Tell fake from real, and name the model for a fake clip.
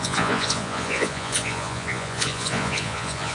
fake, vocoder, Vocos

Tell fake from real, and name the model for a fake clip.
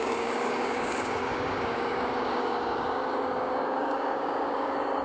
fake, codec, DAC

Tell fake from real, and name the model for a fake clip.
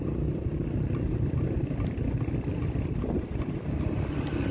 real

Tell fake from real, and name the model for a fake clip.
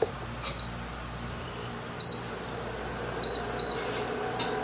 real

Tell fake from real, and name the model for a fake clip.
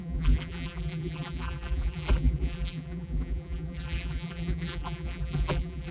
fake, vocoder, BigVGAN v2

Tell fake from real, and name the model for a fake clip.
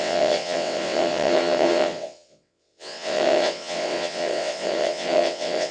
fake, vocoder, WaveNeXt